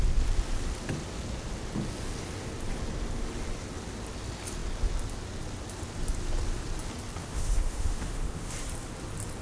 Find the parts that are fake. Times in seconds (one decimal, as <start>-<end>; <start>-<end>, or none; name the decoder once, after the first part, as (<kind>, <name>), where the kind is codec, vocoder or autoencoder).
7.2-8.5 (autoencoder, DAC-VAE)